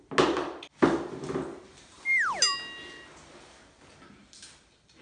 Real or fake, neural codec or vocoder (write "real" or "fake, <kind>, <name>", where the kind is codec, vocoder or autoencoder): real